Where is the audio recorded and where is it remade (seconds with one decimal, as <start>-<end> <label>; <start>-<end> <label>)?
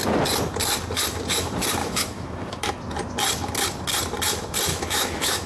0.0-1.8 recorded; 1.8-2.7 remade; 2.7-4.7 recorded; 4.7-5.5 remade